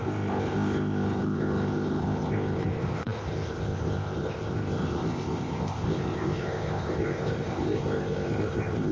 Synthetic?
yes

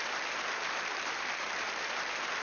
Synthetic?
no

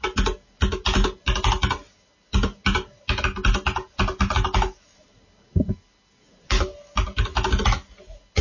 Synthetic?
no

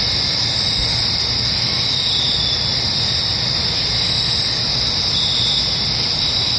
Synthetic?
no